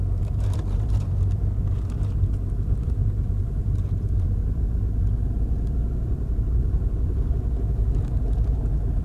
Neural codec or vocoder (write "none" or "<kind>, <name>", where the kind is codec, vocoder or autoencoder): vocoder, BigVGAN v2